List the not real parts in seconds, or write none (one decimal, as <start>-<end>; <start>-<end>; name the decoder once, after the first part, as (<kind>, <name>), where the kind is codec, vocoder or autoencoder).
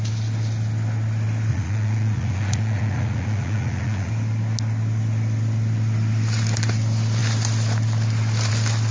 1.5-4.1 (vocoder, Vocos)